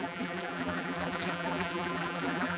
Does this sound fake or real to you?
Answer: fake